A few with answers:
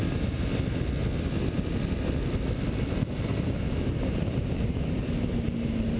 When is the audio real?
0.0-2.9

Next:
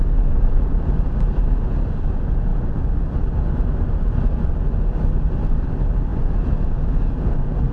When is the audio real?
0.0-7.7